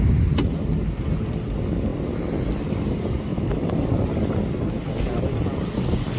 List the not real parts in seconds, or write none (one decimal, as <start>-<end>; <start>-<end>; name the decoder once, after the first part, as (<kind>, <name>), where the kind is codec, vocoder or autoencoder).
none